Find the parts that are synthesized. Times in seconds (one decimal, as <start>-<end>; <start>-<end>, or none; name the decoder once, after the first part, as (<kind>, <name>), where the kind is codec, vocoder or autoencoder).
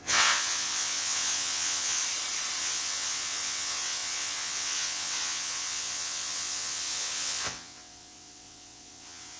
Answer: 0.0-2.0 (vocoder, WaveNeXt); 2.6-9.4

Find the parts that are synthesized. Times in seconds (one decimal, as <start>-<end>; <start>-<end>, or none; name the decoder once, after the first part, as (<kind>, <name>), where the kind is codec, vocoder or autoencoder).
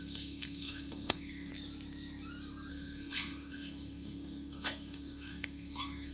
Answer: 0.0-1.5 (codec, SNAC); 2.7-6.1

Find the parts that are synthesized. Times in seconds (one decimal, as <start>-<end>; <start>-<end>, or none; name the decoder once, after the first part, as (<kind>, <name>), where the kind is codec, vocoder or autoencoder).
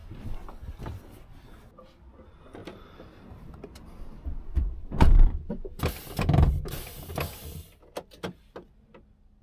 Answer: 2.6-5.9 (vocoder, BigVGAN v2)